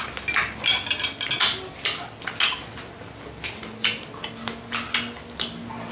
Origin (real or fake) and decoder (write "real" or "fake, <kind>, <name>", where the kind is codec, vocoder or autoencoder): real